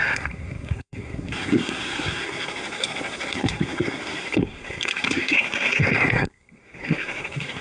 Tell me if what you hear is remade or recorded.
remade